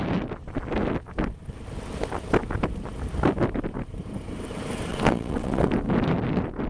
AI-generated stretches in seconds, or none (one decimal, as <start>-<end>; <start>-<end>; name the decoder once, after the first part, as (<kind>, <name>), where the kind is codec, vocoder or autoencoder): 4.9-5.7 (vocoder, WaveNeXt)